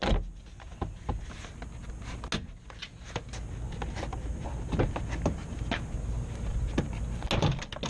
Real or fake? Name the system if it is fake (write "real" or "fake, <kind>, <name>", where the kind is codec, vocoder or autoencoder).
real